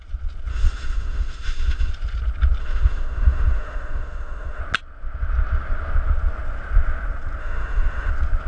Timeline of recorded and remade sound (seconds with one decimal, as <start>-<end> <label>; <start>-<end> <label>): 0.0-0.5 recorded; 0.5-1.9 remade; 1.9-2.6 recorded; 2.6-4.6 remade; 4.6-7.4 recorded; 7.4-8.1 remade; 8.1-8.5 recorded

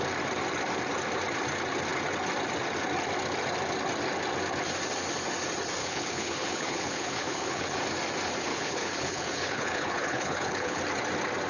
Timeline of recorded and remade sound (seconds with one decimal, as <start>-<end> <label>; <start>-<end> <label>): 0.0-5.8 recorded; 5.8-7.8 remade; 7.8-8.5 recorded; 8.5-10.8 remade; 10.8-11.5 recorded

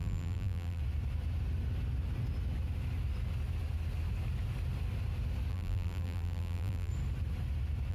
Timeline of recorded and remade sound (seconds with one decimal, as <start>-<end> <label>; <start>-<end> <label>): 0.0-0.8 remade; 0.8-5.5 recorded; 5.5-6.9 remade; 6.9-7.9 recorded

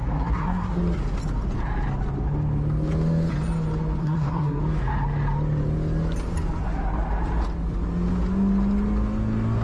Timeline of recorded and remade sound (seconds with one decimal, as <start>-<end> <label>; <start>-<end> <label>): 0.0-0.8 remade; 0.8-4.0 recorded; 4.0-4.6 remade; 4.6-9.6 recorded